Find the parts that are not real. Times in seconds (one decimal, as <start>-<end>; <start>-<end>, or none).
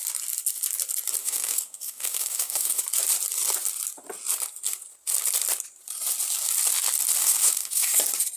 1.2-2.8; 7.2-8.0